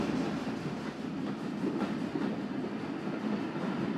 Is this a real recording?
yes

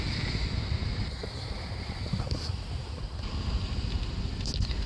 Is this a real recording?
yes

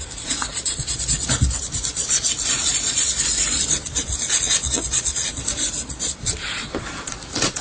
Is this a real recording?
no